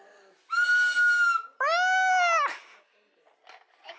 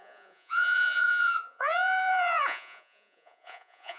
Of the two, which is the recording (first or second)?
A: first